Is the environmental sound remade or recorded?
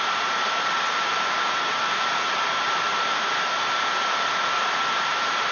remade